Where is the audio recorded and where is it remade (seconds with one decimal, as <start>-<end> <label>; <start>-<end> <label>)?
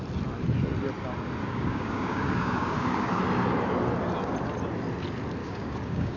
0.0-1.4 recorded; 1.4-3.2 remade; 3.2-5.4 recorded; 5.4-6.2 remade